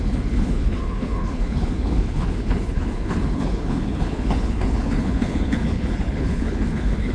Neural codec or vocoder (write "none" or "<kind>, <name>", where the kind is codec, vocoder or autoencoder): codec, HILCodec